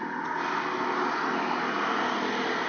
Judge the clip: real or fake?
real